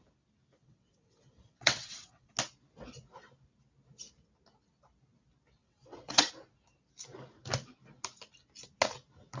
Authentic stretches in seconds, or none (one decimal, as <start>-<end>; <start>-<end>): 0.0-0.6; 2.3-5.6; 6.3-9.4